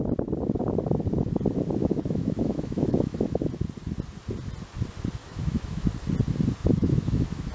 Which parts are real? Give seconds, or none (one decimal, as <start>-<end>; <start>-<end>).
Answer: 0.0-1.8; 3.4-5.2; 5.9-6.6